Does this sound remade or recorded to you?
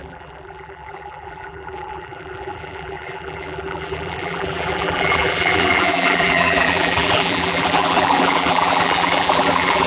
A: remade